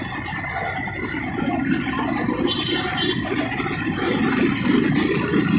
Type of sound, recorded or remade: recorded